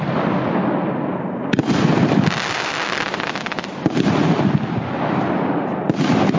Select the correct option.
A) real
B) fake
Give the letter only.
A